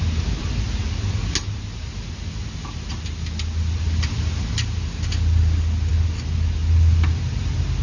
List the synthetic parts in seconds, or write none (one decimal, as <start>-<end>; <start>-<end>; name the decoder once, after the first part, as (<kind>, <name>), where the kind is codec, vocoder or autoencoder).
none

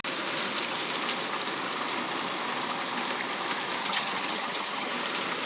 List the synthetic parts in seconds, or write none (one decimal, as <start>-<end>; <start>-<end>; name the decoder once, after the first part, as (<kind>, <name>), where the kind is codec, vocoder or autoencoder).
3.8-4.9 (vocoder, HiFi-GAN)